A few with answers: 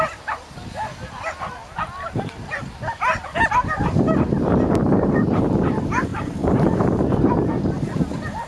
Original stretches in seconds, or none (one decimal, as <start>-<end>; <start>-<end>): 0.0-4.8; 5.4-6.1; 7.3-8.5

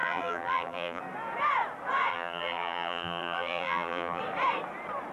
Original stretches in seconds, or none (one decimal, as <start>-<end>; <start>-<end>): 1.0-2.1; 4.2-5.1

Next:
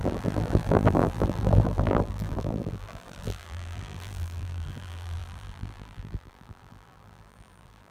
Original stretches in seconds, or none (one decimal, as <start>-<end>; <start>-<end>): none

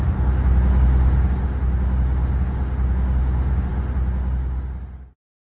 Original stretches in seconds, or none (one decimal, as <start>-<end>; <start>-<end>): 0.0-5.5

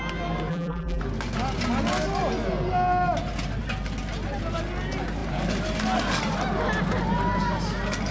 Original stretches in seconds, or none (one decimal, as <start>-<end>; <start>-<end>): 0.0-0.5; 1.0-8.1

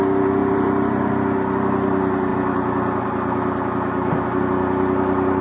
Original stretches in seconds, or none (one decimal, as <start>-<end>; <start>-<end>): 0.0-0.4; 1.1-5.4

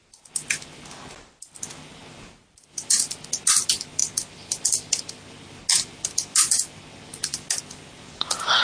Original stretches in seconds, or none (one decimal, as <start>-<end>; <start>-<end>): 0.0-8.6

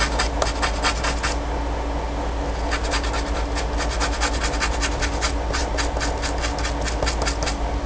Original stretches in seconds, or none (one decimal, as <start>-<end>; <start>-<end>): 0.0-7.9